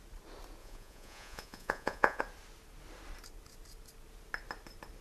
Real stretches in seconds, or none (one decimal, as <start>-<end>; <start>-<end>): 0.0-0.6; 2.2-5.0